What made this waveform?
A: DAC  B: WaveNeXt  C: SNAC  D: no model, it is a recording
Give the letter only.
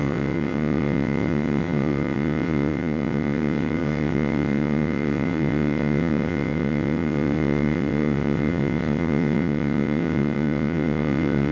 B